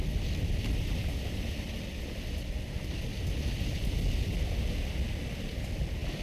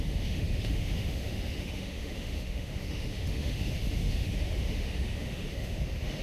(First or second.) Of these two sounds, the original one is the first